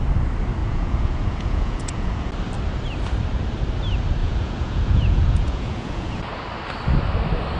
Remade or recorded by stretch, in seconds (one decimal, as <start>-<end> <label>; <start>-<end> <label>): 0.0-0.6 recorded; 0.6-2.3 remade; 2.3-4.2 recorded; 4.2-6.3 remade; 6.3-7.6 recorded